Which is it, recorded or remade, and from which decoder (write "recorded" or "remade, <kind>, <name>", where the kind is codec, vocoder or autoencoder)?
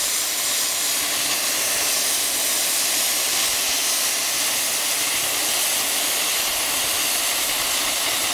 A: recorded